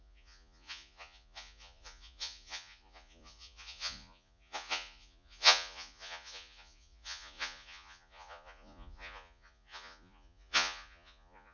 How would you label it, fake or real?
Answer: fake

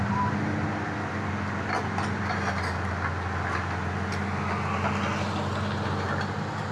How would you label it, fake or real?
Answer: real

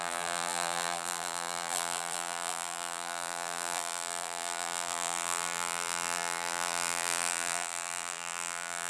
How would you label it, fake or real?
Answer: fake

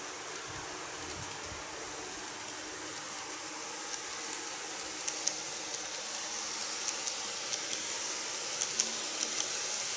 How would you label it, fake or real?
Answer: real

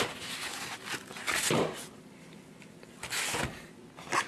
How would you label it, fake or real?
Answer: real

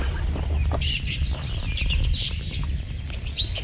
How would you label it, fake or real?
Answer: real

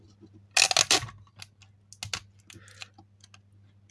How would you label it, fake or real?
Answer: real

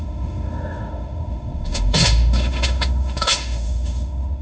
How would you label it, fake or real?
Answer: fake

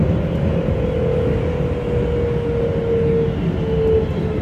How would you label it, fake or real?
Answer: real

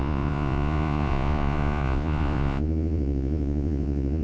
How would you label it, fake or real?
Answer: fake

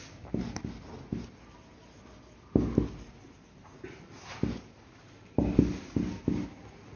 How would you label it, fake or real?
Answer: real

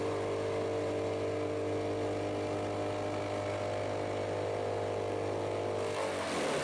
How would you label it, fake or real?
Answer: real